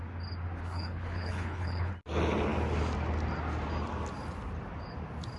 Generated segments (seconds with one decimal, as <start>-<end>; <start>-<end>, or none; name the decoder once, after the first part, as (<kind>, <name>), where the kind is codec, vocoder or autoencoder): 0.6-1.9 (codec, HILCodec)